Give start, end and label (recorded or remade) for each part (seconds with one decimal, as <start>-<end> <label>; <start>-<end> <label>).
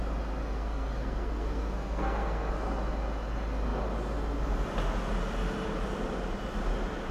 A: 0.0-0.4 recorded; 0.4-2.5 remade; 2.5-7.1 recorded